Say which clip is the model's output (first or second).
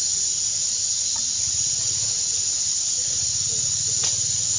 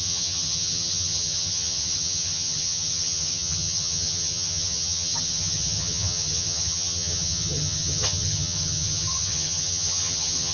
second